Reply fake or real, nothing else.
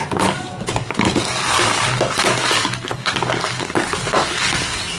fake